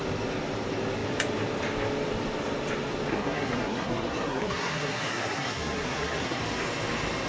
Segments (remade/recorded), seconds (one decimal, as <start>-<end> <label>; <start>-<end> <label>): 0.0-3.1 recorded; 3.1-6.4 remade; 6.4-7.3 recorded